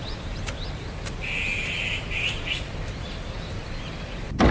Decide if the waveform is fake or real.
real